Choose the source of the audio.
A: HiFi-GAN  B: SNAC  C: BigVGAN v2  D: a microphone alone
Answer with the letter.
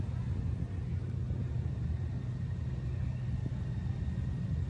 D